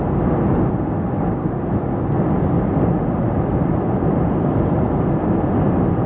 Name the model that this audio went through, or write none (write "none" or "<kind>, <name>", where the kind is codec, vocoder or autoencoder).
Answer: none